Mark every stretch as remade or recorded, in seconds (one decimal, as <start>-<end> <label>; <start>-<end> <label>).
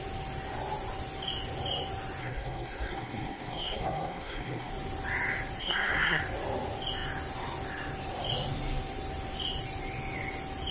0.0-2.2 recorded; 2.2-4.7 remade; 4.7-5.6 recorded; 5.6-6.2 remade; 6.2-10.7 recorded